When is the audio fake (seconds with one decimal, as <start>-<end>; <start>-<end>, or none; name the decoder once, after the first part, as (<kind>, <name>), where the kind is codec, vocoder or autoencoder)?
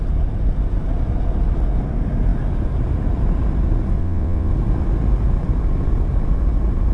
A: 4.0-4.5 (vocoder, WaveNeXt)